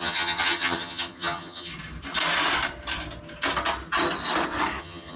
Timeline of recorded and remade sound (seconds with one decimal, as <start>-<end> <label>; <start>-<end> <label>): 0.0-1.7 remade; 1.7-4.8 recorded; 4.8-5.2 remade

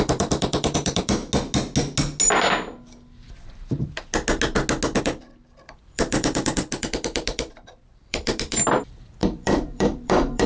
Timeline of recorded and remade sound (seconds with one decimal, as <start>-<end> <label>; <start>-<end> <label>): 0.0-1.2 remade; 1.2-5.0 recorded; 5.0-10.5 remade

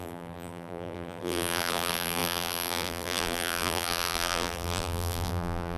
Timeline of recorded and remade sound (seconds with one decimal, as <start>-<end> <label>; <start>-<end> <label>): 0.0-5.8 remade

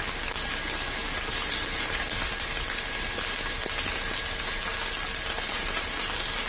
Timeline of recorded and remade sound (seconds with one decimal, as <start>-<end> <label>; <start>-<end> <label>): 0.0-6.5 recorded

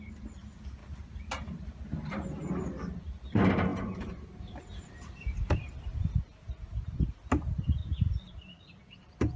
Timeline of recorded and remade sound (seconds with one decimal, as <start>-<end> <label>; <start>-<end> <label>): 0.0-7.8 recorded; 7.8-8.8 remade; 8.8-9.4 recorded